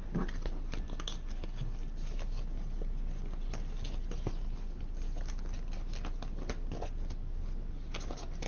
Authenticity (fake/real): real